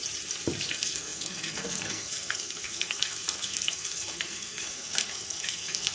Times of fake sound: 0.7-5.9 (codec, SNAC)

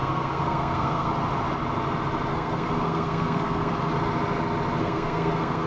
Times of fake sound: 0.0-1.1 (codec, SNAC); 2.3-3.7; 4.8-5.7

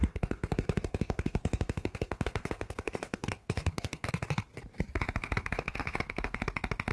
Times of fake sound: 0.0-4.1 (codec, SNAC); 5.2-6.4

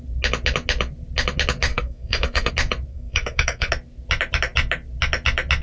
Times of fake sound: 1.7-2.5 (codec, SNAC); 2.9-3.7

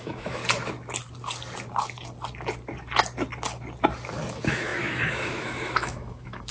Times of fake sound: 0.0-0.4 (autoencoder, DAC-VAE); 4.3-6.5